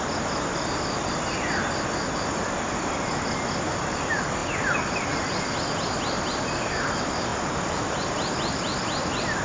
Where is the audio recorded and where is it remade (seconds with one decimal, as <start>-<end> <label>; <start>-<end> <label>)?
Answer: 0.0-9.4 recorded